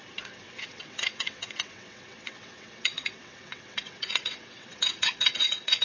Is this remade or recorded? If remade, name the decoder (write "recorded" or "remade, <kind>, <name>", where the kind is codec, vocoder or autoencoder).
remade, vocoder, WaveNeXt